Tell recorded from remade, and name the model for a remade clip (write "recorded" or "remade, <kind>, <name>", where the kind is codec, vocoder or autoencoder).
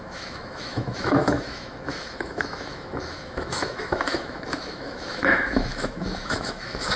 remade, autoencoder, DAC-VAE